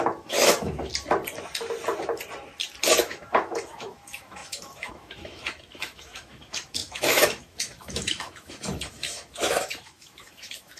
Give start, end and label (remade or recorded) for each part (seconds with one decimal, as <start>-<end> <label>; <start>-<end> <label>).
0.0-0.9 remade; 0.9-3.0 recorded; 3.0-10.8 remade